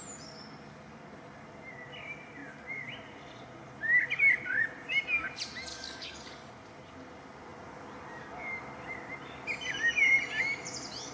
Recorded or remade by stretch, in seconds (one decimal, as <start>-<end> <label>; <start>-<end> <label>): 0.0-5.7 recorded; 5.7-6.5 remade; 6.5-11.1 recorded